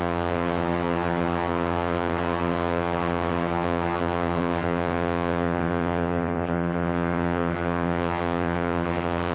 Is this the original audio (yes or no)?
no